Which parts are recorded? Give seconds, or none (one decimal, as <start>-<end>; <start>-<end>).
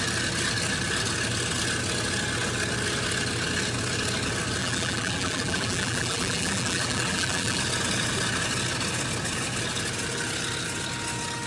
0.0-4.6; 7.6-11.5